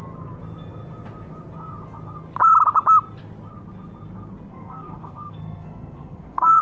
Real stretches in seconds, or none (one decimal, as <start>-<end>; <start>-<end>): 0.0-4.5